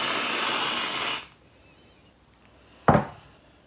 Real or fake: real